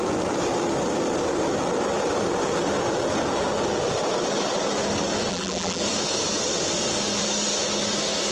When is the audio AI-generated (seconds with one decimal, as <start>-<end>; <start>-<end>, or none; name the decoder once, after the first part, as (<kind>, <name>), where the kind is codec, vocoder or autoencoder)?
5.3-5.8 (vocoder, BigVGAN v2)